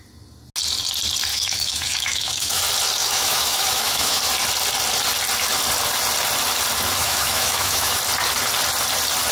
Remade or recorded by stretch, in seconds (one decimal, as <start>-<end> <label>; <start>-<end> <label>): 0.0-1.3 recorded; 1.3-2.6 remade; 2.6-3.0 recorded; 3.0-4.2 remade; 4.2-7.0 recorded; 7.0-8.0 remade; 8.0-9.3 recorded